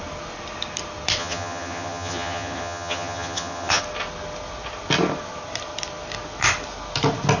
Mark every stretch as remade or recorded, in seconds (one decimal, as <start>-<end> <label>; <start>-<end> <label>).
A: 0.0-1.2 recorded; 1.2-3.8 remade; 3.8-7.4 recorded